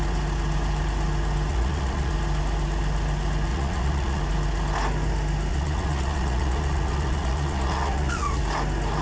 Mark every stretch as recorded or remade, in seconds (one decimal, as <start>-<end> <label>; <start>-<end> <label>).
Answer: 0.0-1.5 recorded; 1.5-2.1 remade; 2.1-3.5 recorded; 3.5-4.2 remade; 4.2-5.5 recorded; 5.5-8.4 remade; 8.4-9.0 recorded